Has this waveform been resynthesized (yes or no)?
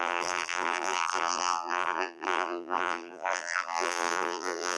yes